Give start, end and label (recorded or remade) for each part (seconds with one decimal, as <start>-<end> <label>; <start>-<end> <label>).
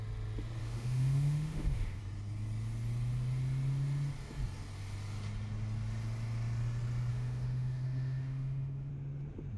0.0-0.6 recorded; 0.6-2.0 remade; 2.0-7.1 recorded; 7.1-8.9 remade; 8.9-9.6 recorded